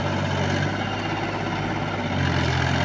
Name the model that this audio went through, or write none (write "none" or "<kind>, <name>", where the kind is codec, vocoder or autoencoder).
none